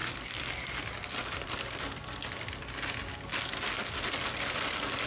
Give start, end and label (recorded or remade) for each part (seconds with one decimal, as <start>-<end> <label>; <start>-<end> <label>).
0.0-5.1 recorded

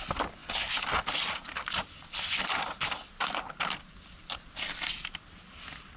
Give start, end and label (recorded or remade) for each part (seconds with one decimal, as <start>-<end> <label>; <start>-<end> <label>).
0.0-6.0 recorded